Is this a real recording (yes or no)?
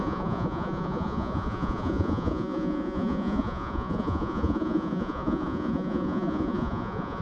no